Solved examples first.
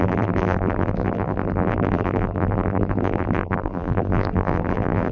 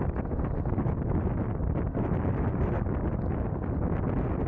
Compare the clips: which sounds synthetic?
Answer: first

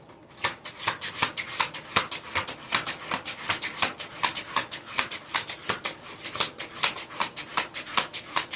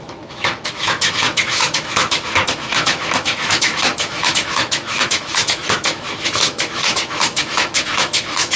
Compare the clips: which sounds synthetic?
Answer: second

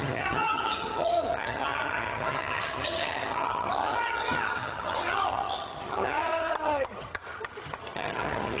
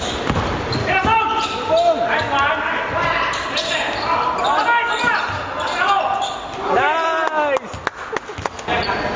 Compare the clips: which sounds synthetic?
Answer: first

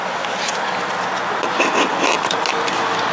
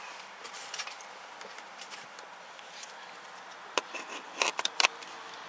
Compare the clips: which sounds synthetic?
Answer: second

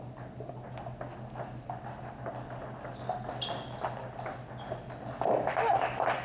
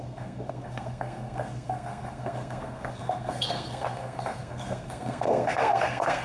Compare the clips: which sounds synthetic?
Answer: second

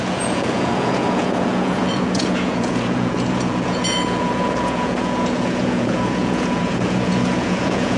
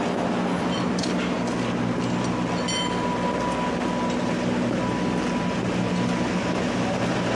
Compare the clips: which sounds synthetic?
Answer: first